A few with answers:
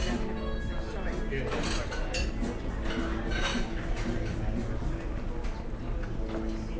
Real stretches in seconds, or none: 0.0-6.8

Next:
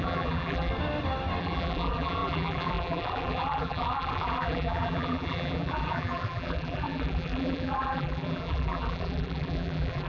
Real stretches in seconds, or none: 0.7-1.4

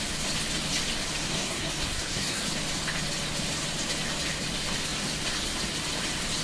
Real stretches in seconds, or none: 0.0-1.2; 2.5-6.4

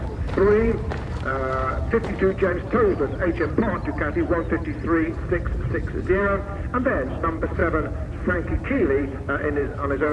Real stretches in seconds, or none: 3.8-5.4; 7.6-8.3

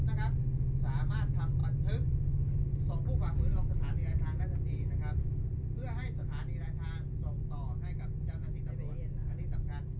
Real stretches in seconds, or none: 0.0-10.0

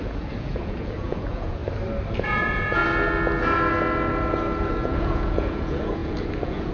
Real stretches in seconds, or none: 1.6-2.2; 2.8-4.7

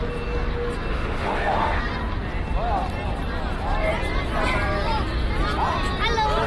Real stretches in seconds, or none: 0.0-0.9; 1.8-6.5

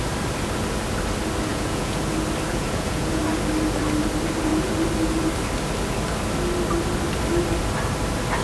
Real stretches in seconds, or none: 0.0-1.5; 2.0-2.5; 3.2-8.4